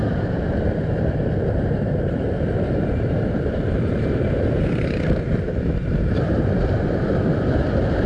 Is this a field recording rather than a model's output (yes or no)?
no